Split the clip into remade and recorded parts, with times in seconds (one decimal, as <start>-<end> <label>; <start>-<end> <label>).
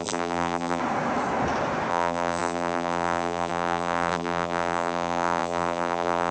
0.0-0.8 remade; 0.8-1.9 recorded; 1.9-6.3 remade